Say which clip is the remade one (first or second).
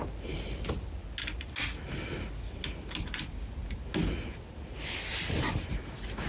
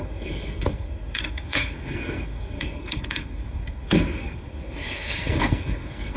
second